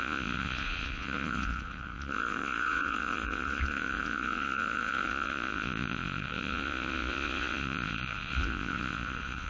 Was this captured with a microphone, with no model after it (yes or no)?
no